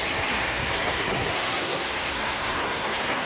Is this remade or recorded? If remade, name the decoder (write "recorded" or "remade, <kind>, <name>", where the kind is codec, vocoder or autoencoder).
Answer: remade, codec, SNAC